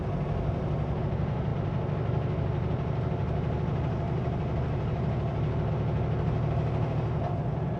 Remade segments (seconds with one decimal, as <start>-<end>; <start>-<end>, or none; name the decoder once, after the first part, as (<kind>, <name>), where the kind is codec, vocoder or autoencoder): none